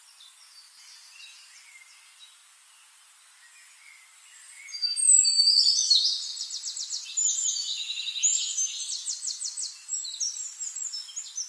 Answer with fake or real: real